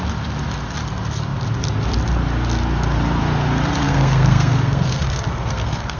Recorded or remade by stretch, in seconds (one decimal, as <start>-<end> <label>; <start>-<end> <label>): 0.0-3.8 recorded; 3.8-6.0 remade